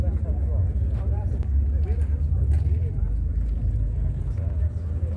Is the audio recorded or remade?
recorded